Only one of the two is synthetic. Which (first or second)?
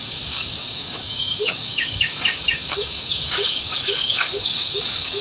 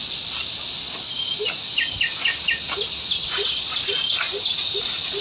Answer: first